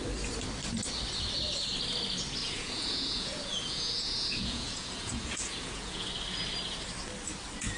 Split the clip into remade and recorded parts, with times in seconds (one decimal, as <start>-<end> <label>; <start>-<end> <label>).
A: 0.0-2.4 recorded; 2.4-6.1 remade; 6.1-7.8 recorded